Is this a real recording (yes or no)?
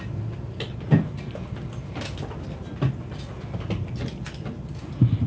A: yes